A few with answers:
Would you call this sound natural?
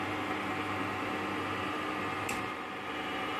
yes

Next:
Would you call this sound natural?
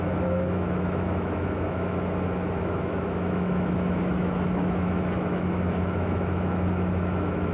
no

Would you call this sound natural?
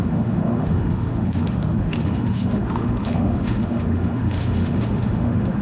no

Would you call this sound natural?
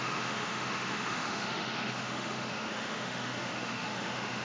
no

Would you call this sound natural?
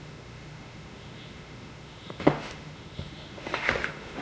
no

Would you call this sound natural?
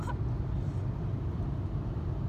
yes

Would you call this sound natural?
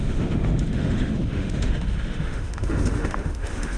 no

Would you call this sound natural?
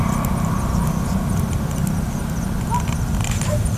yes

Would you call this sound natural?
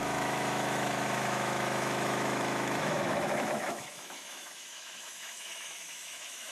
no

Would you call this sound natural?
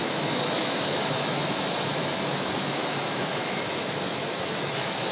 no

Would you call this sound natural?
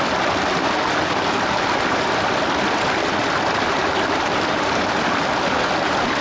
yes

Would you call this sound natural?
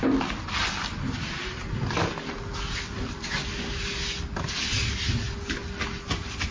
yes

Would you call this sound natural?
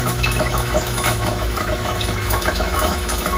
no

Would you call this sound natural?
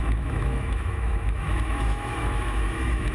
no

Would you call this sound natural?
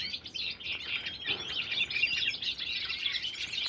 yes